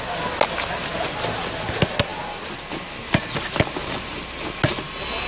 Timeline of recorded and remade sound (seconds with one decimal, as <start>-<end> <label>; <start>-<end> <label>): 0.0-5.3 recorded